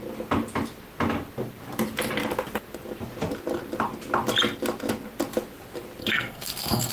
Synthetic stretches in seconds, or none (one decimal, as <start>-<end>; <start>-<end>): 6.0-6.9